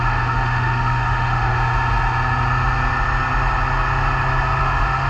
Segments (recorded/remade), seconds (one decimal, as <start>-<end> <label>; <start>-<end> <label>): 0.0-1.5 remade; 1.5-4.6 recorded; 4.6-5.1 remade